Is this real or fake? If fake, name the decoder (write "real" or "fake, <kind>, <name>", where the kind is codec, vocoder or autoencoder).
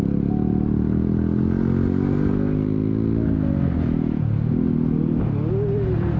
real